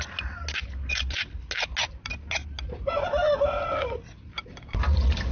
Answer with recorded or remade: recorded